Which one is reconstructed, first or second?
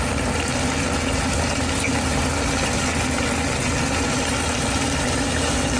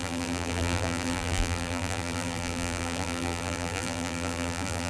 second